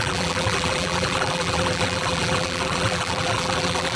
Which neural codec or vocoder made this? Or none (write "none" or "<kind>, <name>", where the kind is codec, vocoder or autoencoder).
vocoder, BigVGAN v2